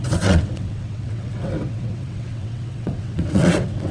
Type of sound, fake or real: fake